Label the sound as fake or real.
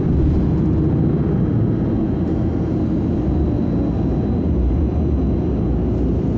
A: real